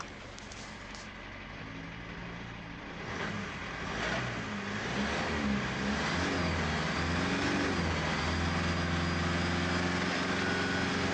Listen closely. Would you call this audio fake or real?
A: real